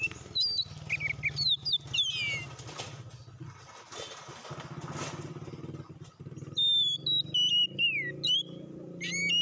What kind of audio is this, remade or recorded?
recorded